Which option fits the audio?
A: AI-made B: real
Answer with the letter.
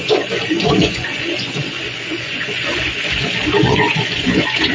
A